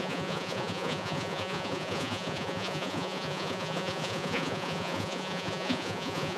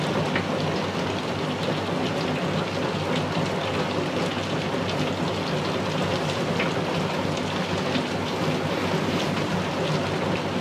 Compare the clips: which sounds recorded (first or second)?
second